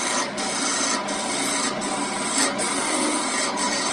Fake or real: real